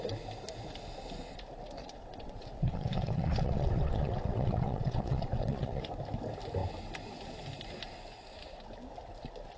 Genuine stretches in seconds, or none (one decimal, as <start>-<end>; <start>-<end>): 0.0-1.8; 5.8-9.6